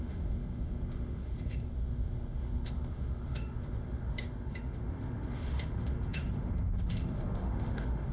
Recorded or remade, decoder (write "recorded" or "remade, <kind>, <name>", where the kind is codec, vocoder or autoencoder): remade, autoencoder, DAC-VAE